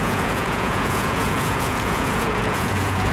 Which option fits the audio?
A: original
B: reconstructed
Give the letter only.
B